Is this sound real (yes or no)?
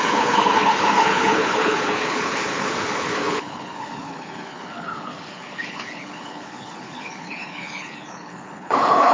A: no